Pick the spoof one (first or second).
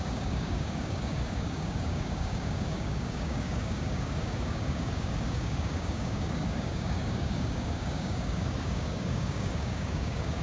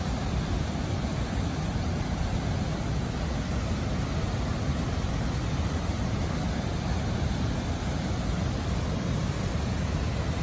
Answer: first